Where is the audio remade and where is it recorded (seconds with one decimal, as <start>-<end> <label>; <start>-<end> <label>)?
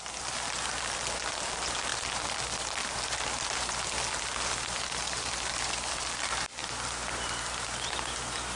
0.0-8.6 recorded